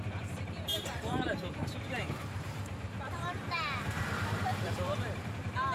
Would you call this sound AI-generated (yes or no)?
yes